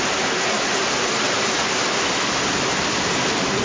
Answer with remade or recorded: recorded